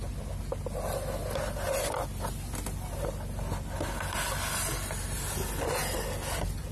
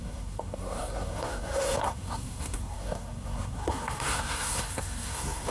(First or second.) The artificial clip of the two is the second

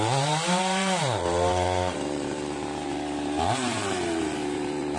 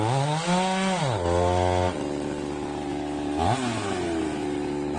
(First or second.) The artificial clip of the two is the first